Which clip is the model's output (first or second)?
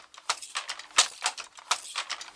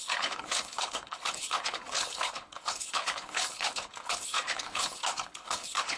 second